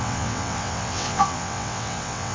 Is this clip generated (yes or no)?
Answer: yes